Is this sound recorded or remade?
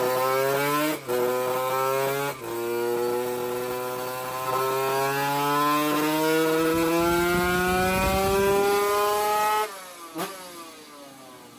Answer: recorded